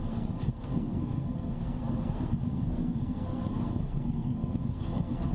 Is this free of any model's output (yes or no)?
no